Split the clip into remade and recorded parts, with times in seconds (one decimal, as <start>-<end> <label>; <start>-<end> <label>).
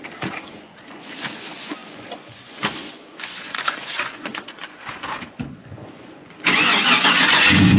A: 0.0-7.8 remade